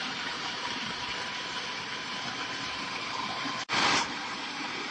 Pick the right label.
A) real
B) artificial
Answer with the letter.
B